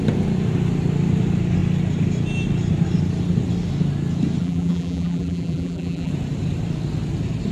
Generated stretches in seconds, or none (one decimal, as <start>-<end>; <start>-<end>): 4.4-6.1